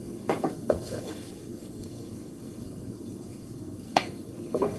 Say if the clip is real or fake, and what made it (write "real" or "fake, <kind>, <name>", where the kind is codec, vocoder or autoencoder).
fake, codec, SNAC